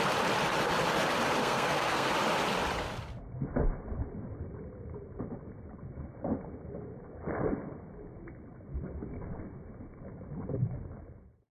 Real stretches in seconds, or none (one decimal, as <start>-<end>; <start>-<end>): 0.0-1.4; 2.1-11.5